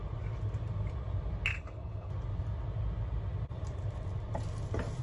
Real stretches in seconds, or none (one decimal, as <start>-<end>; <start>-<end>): 0.0-1.5; 2.1-5.0